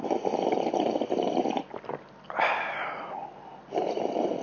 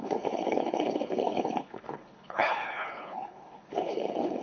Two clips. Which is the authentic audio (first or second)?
first